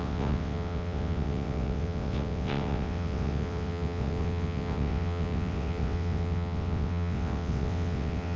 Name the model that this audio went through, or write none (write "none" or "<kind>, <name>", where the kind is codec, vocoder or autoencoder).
vocoder, WaveNeXt